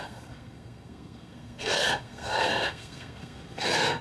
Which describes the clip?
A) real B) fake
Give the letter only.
B